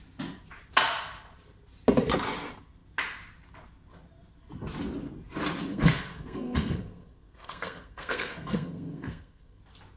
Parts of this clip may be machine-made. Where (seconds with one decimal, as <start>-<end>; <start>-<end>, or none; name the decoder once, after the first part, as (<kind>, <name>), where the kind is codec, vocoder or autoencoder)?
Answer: 5.7-9.6 (codec, SNAC)